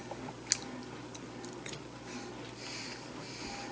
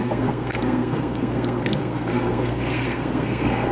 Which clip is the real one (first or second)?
first